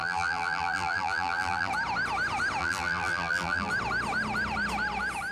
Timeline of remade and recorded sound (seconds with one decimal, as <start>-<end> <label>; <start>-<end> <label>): 0.0-1.7 remade; 1.7-2.6 recorded; 2.6-3.7 remade; 3.7-5.3 recorded